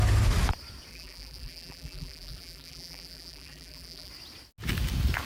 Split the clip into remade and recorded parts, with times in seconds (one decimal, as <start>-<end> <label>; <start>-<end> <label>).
0.0-0.9 recorded; 0.9-4.1 remade; 4.1-5.3 recorded